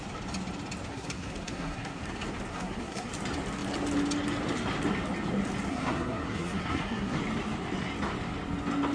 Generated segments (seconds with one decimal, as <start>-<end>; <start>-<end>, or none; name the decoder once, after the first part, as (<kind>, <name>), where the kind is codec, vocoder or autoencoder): 0.9-2.0 (codec, SNAC); 2.5-3.1; 5.7-7.2

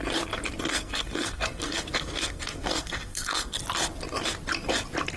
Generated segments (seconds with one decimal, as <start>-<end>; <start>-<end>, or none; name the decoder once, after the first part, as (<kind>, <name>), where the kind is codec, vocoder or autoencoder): 0.7-3.6 (codec, SNAC)

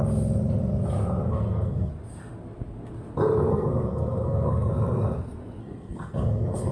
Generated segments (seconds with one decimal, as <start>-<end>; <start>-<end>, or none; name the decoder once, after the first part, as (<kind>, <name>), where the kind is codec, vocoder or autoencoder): 1.3-1.9 (codec, SNAC); 3.5-4.7; 5.6-6.7

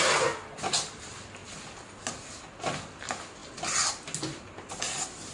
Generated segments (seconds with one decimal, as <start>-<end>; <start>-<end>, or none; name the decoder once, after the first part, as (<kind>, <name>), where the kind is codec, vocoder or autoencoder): none